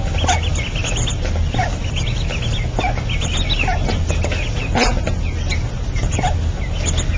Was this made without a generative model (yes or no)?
yes